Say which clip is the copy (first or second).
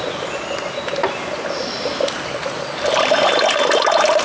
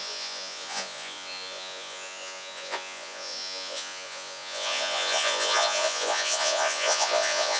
second